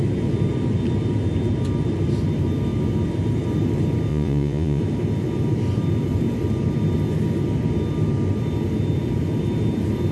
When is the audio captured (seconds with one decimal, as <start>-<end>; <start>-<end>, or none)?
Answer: 0.0-4.1; 4.8-10.1

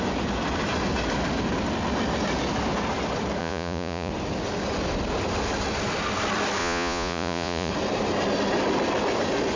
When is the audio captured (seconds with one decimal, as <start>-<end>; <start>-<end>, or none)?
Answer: 0.0-3.4; 4.1-6.6; 7.7-9.6

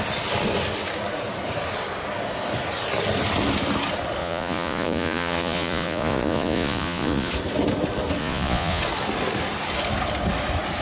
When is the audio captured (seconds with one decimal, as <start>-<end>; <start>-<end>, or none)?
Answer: 0.0-4.2; 7.3-8.2; 8.8-10.8